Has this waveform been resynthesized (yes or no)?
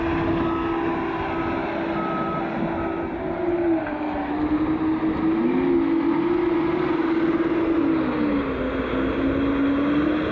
no